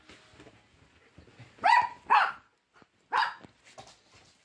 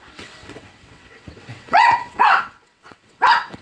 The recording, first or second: first